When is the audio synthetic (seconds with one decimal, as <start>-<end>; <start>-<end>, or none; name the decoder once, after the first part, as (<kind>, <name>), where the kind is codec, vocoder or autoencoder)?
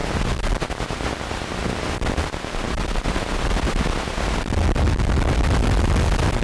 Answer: none